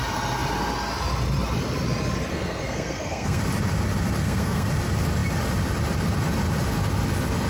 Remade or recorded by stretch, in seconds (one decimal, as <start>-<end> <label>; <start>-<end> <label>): 0.0-2.3 recorded; 2.3-3.4 remade; 3.4-4.2 recorded; 4.2-4.7 remade; 4.7-7.5 recorded